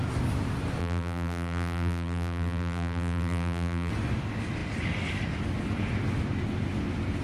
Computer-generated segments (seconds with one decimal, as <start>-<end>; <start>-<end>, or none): 0.8-3.9